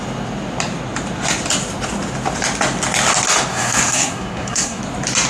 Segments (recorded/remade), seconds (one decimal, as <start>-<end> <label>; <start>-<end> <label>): 0.0-3.5 recorded; 3.5-4.8 remade; 4.8-5.3 recorded